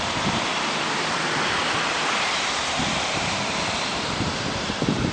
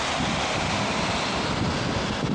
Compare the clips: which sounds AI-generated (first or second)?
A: first